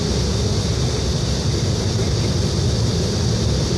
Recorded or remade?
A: recorded